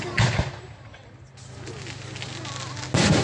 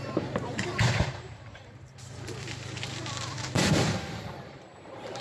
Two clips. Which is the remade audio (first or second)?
second